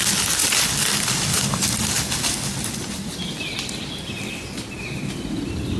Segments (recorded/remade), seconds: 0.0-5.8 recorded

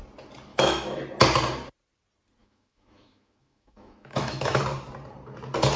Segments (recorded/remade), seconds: 0.0-0.5 recorded; 0.5-1.0 remade; 1.0-2.4 recorded; 2.4-4.6 remade; 4.6-5.8 recorded

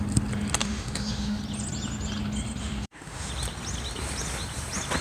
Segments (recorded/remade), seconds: 0.0-0.6 recorded; 0.6-1.4 remade; 1.4-2.6 recorded; 2.6-3.3 remade; 3.3-5.0 recorded

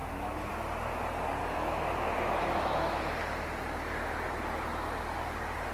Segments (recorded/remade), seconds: 0.0-0.5 remade; 0.5-1.4 recorded; 1.4-3.0 remade; 3.0-5.7 recorded

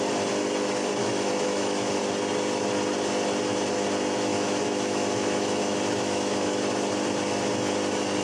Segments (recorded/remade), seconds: 0.0-1.0 recorded; 1.0-2.0 remade; 2.0-4.3 recorded; 4.3-6.6 remade; 6.6-8.2 recorded

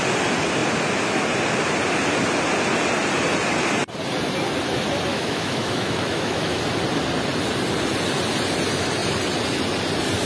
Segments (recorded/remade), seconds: 0.0-5.1 recorded; 5.1-6.6 remade; 6.6-10.3 recorded

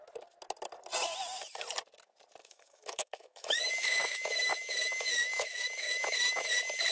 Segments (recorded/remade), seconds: 0.0-2.4 recorded; 2.4-6.5 remade; 6.5-6.9 recorded